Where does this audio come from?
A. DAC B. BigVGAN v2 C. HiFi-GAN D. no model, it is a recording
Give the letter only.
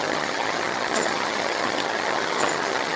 C